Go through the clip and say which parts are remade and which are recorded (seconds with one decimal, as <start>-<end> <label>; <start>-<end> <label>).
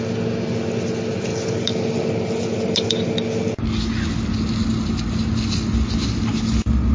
0.0-6.9 recorded